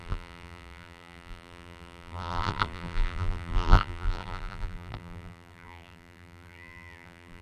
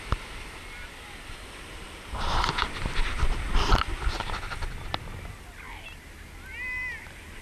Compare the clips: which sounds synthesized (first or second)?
first